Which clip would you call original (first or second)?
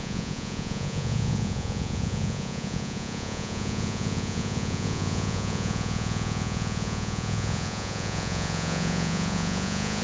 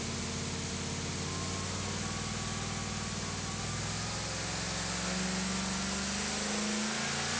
second